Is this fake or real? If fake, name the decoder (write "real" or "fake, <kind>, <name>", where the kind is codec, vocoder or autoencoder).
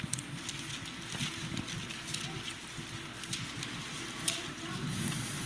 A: real